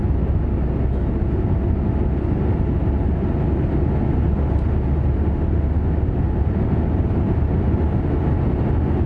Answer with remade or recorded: recorded